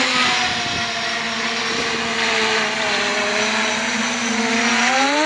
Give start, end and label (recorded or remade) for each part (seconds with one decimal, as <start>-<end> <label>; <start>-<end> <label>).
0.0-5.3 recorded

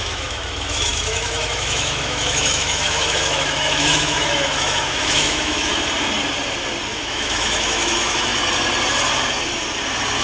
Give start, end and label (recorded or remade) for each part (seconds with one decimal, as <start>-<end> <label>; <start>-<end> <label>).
0.0-5.7 remade; 5.7-6.9 recorded; 6.9-8.3 remade; 8.3-10.2 recorded

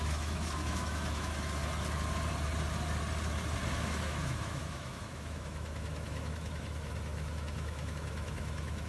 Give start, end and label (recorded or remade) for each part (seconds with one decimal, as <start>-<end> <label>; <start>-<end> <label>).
0.0-1.6 remade; 1.6-3.7 recorded; 3.7-8.9 remade

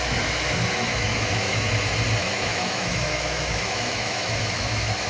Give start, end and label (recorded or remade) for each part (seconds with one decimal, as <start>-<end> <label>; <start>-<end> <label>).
0.0-0.9 recorded; 0.9-1.7 remade; 1.7-2.2 recorded; 2.2-5.1 remade

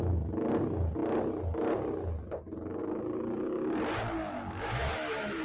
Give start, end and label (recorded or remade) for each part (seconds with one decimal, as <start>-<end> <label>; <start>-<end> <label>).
0.0-4.2 recorded; 4.2-5.4 remade